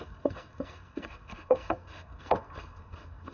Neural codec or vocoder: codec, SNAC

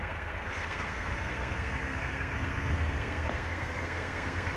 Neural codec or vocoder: codec, SNAC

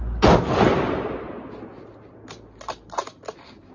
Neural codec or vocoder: none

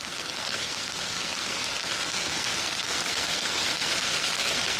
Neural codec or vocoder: codec, SNAC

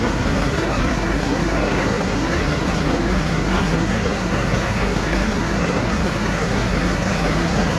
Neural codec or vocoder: codec, SNAC